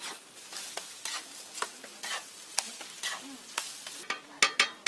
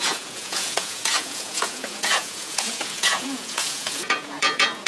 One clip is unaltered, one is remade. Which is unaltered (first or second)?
first